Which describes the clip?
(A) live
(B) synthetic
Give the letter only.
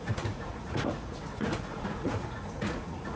B